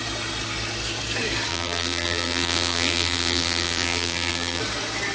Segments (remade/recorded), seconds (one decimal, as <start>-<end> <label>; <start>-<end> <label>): 0.0-1.5 recorded; 1.5-4.6 remade; 4.6-5.1 recorded